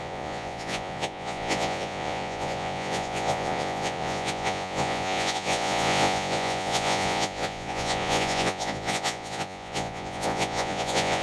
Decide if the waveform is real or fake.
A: fake